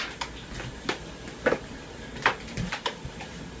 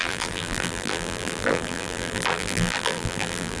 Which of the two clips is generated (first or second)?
second